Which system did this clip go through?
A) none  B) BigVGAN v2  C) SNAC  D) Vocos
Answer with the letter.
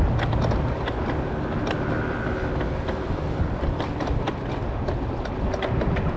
A